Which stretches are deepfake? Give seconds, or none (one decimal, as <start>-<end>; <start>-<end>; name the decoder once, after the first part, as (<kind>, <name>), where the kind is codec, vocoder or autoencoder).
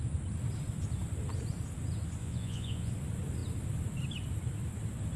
2.2-2.9 (vocoder, Vocos)